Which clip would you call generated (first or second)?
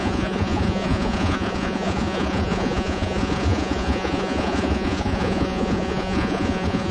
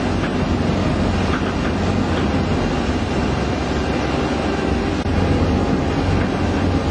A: first